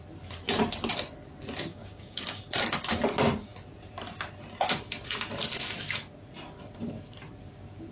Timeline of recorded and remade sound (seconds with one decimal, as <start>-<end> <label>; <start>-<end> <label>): 0.0-1.7 recorded; 1.7-2.4 remade; 2.4-7.9 recorded